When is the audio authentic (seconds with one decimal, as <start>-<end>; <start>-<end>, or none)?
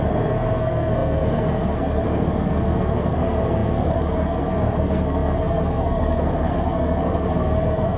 none